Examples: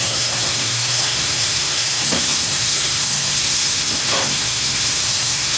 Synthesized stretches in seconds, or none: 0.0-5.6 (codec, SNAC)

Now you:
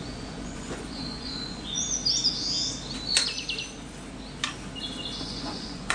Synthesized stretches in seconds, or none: 0.0-2.0 (vocoder, Vocos); 5.2-5.9

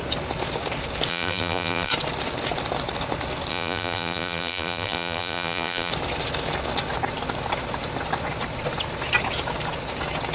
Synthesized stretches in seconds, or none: 1.1-1.9 (vocoder, BigVGAN v2); 3.5-5.9

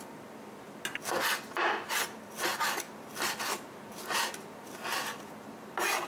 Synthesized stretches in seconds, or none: none

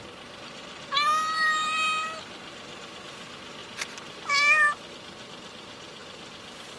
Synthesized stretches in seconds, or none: none

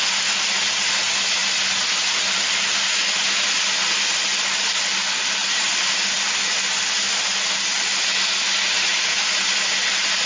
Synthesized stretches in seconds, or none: none

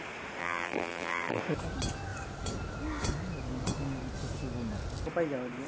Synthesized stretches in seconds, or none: 0.4-1.4 (vocoder, BigVGAN v2)

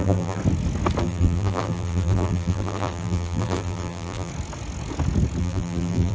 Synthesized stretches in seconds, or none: 0.0-0.4 (vocoder, BigVGAN v2); 1.0-4.3; 5.4-6.1